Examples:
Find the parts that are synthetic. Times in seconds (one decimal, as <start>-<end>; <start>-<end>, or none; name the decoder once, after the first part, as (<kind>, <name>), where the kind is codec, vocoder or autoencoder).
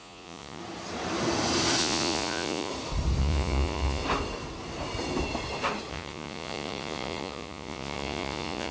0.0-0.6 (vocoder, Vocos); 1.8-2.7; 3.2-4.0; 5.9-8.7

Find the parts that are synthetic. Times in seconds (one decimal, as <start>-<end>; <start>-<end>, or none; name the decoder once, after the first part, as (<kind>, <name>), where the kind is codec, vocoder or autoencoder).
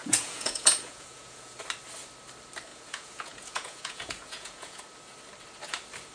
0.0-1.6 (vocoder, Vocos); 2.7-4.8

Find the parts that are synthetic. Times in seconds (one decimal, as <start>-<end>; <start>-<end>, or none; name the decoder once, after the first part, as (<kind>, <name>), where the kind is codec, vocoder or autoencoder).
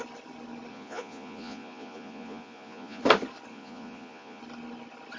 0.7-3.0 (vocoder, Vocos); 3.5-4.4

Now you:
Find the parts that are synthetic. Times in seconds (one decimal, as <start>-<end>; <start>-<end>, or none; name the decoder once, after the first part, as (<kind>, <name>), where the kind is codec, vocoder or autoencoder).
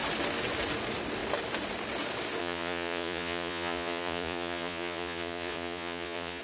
2.4-6.4 (vocoder, Vocos)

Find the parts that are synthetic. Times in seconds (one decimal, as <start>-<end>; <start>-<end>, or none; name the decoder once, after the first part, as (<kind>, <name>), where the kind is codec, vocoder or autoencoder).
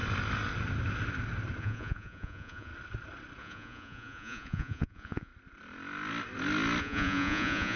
1.6-2.7 (vocoder, Vocos); 3.4-5.3; 6.8-7.8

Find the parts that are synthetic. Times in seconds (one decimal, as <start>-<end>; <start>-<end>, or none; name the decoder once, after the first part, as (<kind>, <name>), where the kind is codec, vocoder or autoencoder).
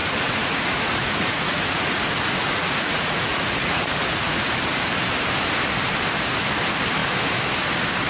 0.0-4.5 (vocoder, Vocos)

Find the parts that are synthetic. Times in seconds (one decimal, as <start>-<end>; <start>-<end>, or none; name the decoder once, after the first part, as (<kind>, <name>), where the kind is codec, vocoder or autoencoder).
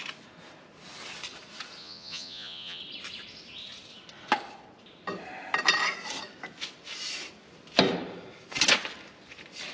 1.8-2.8 (vocoder, Vocos)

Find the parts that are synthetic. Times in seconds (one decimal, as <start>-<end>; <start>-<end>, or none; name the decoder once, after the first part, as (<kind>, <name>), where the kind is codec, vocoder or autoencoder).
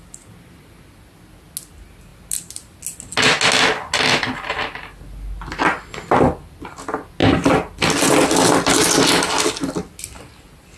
none